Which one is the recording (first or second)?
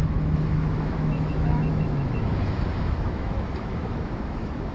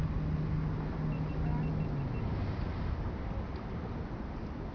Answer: second